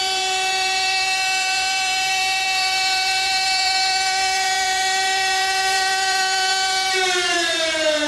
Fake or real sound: fake